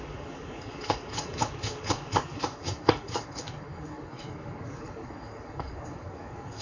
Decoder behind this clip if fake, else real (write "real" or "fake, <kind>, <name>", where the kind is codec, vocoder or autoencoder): fake, codec, DAC